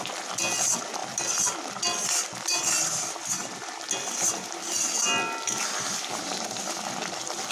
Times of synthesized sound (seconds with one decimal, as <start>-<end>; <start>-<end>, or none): none